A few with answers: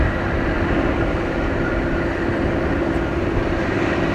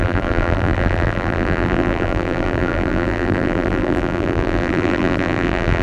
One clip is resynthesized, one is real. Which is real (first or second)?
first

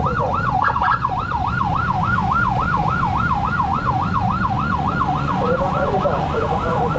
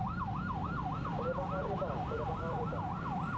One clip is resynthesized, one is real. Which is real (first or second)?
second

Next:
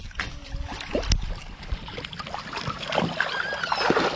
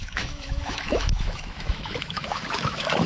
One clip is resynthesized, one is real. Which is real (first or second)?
first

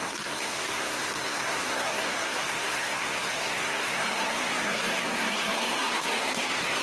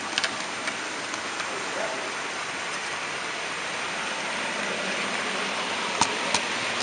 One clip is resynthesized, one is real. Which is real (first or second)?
second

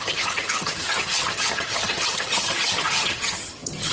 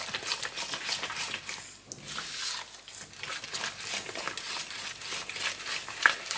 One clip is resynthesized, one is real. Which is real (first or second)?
second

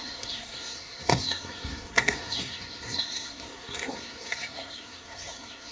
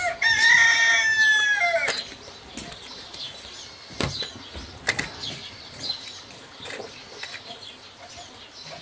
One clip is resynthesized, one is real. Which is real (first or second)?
second